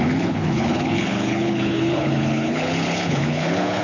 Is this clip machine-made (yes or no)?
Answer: yes